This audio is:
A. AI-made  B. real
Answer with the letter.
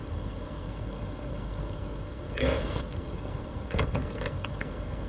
A